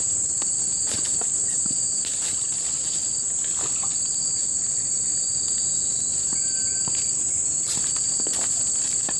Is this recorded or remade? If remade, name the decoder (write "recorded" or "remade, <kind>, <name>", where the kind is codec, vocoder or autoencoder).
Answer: recorded